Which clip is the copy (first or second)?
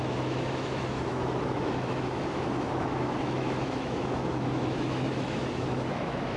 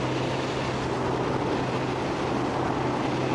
first